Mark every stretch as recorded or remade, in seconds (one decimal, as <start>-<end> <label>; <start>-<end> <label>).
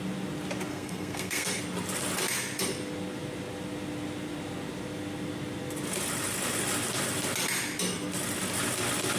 0.0-0.7 recorded; 0.7-1.6 remade; 1.6-9.2 recorded